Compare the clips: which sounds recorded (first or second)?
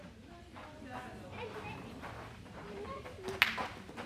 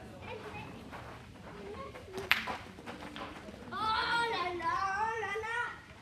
first